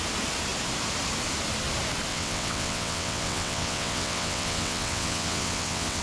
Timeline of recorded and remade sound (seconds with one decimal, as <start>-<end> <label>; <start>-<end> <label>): 0.0-2.1 recorded; 2.1-6.0 remade